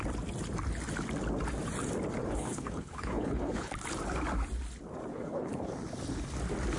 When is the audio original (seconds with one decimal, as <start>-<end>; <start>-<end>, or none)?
0.0-2.2; 3.7-5.1; 5.7-6.8